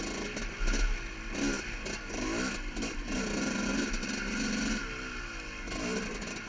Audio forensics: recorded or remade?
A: recorded